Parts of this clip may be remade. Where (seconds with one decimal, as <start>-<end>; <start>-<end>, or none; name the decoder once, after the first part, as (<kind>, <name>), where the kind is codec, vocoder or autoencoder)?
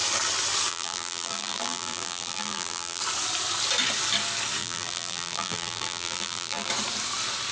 0.7-3.0 (vocoder, BigVGAN v2); 4.6-6.7